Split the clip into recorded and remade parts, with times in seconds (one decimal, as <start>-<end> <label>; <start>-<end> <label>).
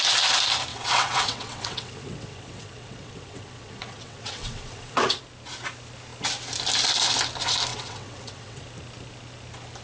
0.0-0.7 recorded; 0.7-5.2 remade; 5.2-7.7 recorded; 7.7-8.6 remade; 8.6-9.8 recorded